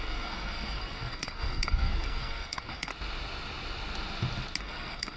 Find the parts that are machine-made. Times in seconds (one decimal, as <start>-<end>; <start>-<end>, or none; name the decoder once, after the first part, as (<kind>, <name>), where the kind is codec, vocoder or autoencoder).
0.0-2.9 (codec, SNAC); 4.6-5.2